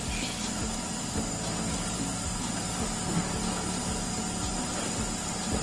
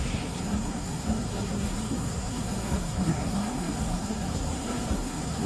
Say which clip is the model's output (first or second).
second